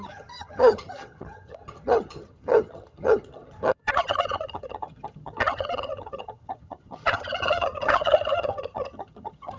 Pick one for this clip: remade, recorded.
remade